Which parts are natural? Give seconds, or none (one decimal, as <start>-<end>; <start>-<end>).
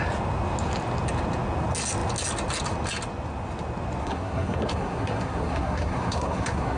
0.0-4.0